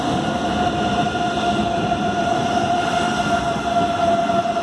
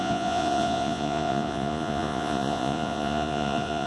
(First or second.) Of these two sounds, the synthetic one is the second